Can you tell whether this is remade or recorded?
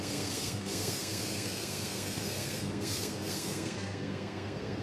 remade